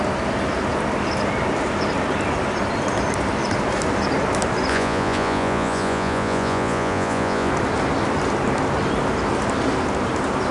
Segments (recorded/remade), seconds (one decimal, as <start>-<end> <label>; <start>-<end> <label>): 0.0-4.7 recorded; 4.7-7.5 remade; 7.5-10.5 recorded